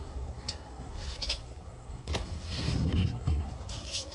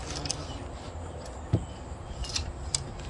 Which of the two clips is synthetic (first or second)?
first